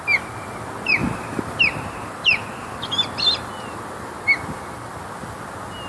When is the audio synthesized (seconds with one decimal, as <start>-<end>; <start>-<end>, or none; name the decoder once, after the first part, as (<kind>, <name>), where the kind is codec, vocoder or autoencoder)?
none

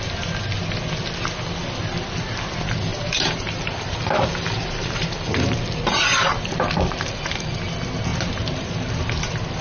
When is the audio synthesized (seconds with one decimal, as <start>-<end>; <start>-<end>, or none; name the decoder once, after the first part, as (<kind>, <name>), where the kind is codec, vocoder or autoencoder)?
2.9-7.6 (vocoder, BigVGAN v2); 8.1-8.7

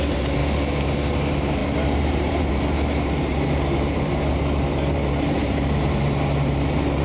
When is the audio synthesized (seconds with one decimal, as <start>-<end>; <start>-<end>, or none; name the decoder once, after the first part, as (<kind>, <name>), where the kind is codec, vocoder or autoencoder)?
0.0-0.4 (vocoder, BigVGAN v2); 0.9-7.0

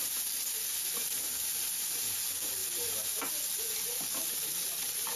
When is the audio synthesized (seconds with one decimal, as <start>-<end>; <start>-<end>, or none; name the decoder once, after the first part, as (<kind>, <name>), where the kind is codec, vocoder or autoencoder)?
none

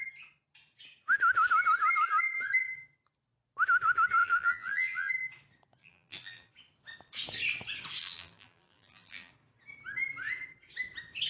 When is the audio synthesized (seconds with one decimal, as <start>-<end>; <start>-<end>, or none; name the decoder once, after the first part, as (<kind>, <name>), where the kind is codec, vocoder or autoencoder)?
4.2-5.1 (vocoder, BigVGAN v2); 5.8-6.5; 8.0-9.3